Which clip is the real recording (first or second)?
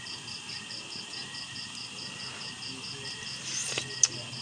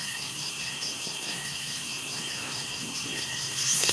first